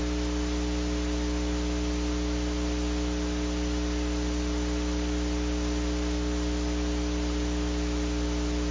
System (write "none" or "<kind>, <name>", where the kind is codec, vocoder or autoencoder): none